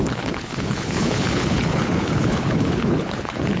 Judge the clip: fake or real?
fake